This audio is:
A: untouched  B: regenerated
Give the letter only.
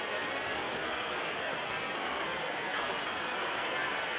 B